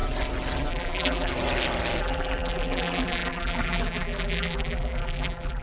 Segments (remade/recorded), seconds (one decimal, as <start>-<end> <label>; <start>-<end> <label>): 0.0-0.7 recorded; 0.7-1.3 remade; 1.3-2.0 recorded; 2.0-5.6 remade